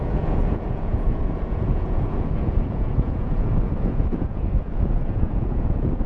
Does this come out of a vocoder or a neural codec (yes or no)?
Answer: yes